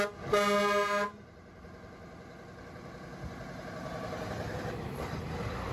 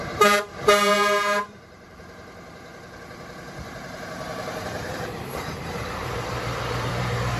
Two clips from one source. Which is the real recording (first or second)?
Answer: first